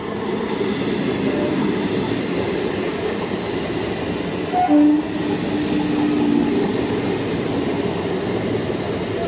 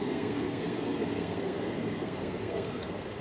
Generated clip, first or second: second